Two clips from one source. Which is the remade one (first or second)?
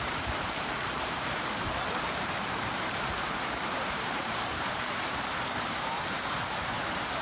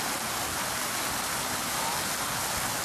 first